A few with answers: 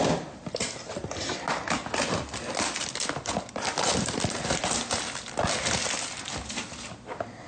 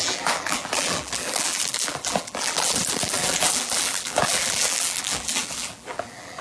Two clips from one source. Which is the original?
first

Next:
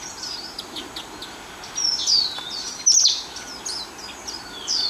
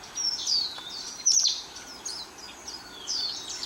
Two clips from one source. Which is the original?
first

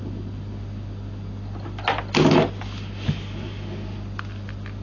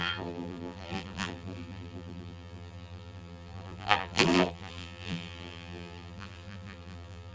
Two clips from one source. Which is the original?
first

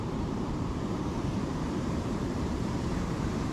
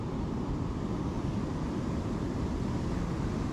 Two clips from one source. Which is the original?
second